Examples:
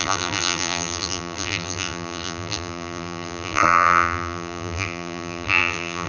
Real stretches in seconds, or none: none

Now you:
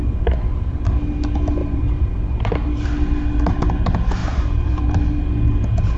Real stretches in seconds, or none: 0.0-1.6; 2.5-4.2; 4.8-6.0